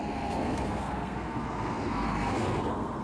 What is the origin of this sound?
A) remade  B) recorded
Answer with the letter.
A